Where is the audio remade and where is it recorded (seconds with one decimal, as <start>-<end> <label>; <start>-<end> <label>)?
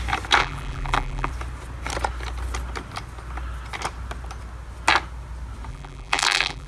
0.0-0.4 recorded; 0.4-1.3 remade; 1.3-5.7 recorded; 5.7-6.7 remade